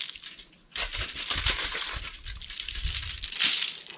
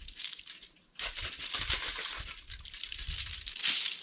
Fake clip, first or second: second